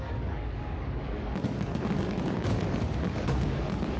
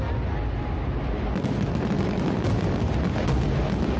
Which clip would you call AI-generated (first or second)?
first